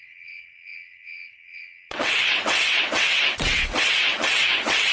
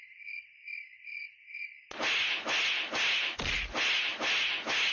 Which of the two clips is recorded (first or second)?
second